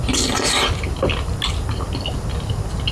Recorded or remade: recorded